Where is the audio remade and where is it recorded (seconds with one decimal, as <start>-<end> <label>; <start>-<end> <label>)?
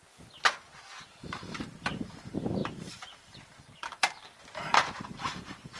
0.0-1.2 recorded; 1.2-5.8 remade